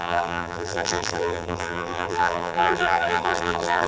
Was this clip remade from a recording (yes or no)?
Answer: yes